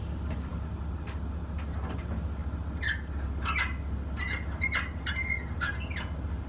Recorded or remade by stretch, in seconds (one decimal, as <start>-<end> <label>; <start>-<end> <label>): 0.0-6.5 recorded